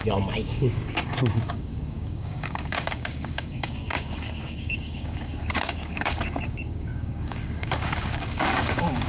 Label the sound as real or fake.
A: fake